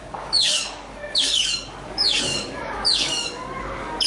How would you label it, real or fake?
fake